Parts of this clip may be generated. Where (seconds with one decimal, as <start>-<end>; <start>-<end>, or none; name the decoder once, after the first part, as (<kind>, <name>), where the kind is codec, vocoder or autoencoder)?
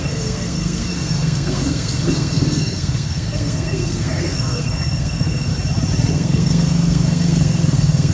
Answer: 0.0-5.5 (codec, SNAC); 6.1-8.1